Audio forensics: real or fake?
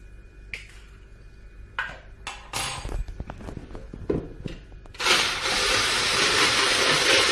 real